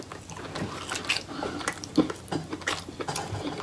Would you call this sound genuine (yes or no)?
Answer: yes